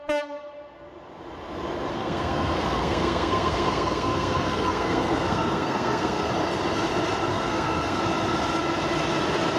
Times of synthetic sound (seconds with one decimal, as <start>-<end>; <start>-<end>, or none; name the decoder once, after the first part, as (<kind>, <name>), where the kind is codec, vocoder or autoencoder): 1.9-6.3 (codec, SNAC); 7.3-8.0